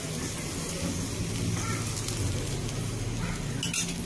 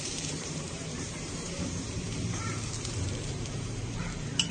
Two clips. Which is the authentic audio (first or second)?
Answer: first